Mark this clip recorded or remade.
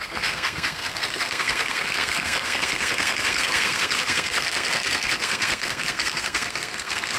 remade